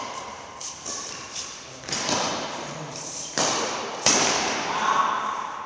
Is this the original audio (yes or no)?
no